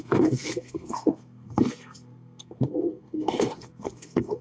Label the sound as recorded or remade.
remade